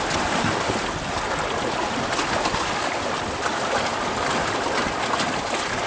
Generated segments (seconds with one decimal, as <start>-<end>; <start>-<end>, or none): none